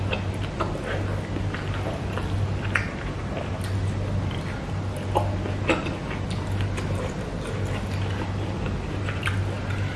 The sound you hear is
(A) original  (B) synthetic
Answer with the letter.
A